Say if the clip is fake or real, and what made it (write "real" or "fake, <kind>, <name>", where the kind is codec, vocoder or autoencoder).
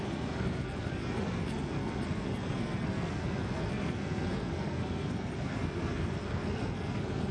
fake, codec, SNAC